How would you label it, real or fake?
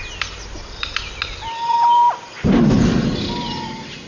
real